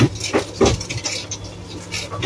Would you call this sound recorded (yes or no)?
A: yes